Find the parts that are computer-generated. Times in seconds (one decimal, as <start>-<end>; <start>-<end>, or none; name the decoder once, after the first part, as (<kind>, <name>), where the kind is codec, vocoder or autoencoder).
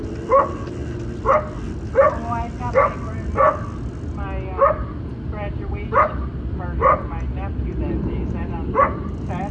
none